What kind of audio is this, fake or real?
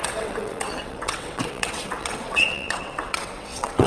fake